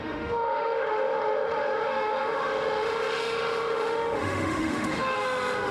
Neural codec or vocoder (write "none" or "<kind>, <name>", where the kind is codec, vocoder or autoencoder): autoencoder, DAC-VAE